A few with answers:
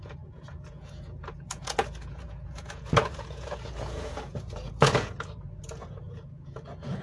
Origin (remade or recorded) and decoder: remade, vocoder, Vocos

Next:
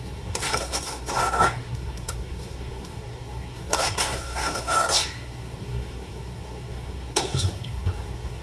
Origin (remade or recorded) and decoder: remade, codec, SNAC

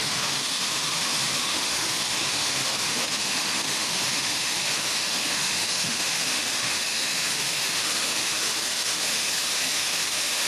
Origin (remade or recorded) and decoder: remade, autoencoder, DAC-VAE